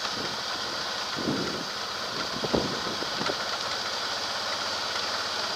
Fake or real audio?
real